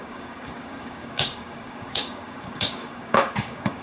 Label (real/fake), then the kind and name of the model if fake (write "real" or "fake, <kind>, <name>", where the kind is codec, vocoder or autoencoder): fake, codec, DAC